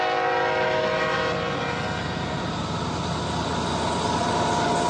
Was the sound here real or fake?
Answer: real